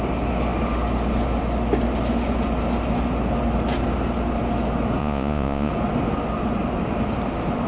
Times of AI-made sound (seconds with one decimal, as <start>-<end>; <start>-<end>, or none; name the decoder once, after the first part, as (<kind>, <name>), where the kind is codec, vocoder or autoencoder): 5.0-5.7 (vocoder, Vocos)